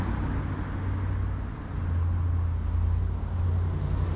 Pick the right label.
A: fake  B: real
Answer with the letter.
B